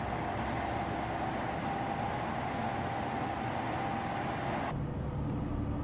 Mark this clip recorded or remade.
recorded